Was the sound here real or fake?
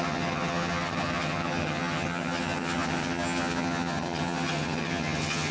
fake